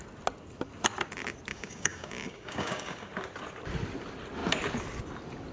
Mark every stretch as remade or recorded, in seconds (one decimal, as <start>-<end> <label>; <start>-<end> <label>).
0.0-1.5 recorded; 1.5-3.1 remade; 3.1-5.5 recorded